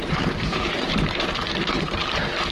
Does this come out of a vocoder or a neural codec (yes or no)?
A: yes